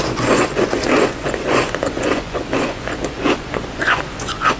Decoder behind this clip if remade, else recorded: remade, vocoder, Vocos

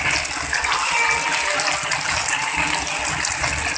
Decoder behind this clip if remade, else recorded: recorded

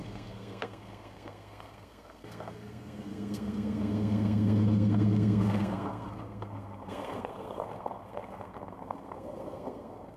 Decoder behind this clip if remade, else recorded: remade, codec, SNAC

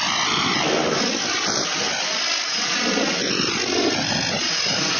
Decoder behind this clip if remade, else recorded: recorded